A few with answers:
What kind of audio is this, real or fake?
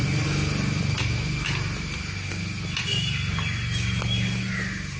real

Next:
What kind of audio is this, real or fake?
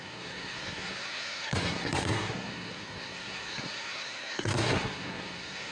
fake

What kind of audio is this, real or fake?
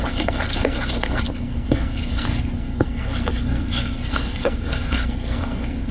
fake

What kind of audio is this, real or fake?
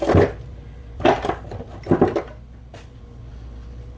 real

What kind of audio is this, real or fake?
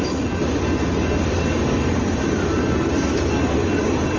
real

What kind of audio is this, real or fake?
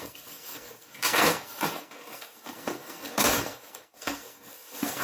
fake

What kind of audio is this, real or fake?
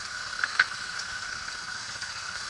fake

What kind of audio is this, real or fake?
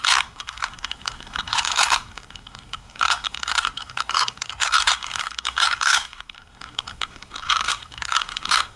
fake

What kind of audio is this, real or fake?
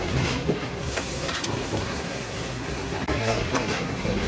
fake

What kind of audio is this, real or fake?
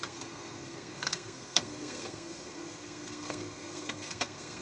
fake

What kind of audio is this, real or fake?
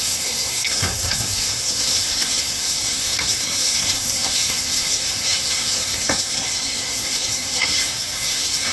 fake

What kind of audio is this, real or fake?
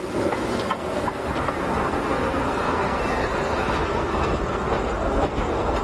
fake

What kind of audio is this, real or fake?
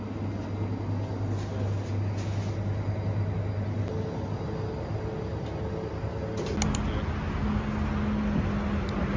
real